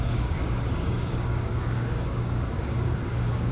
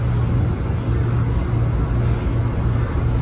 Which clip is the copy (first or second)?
first